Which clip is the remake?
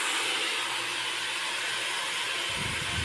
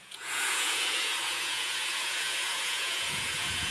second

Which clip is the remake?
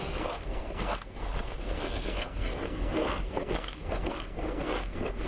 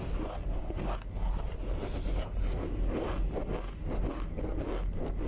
first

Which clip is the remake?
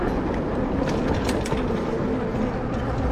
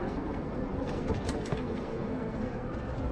second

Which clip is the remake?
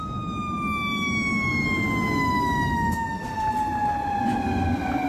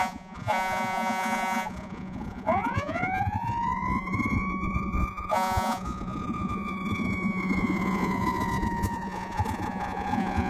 second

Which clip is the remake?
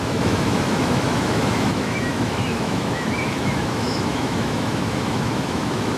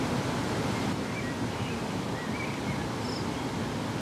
first